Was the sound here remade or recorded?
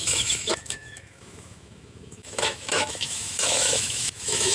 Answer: remade